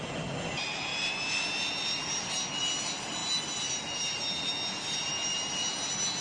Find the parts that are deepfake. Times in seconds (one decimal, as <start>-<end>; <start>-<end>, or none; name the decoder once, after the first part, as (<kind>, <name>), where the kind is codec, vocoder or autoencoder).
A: none